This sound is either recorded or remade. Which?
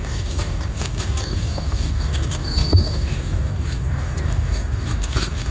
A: remade